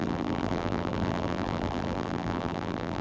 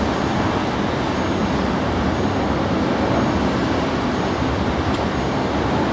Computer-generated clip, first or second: first